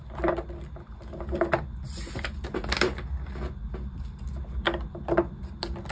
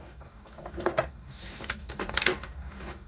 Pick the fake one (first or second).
second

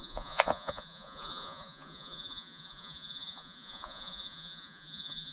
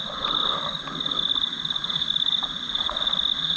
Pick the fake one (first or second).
first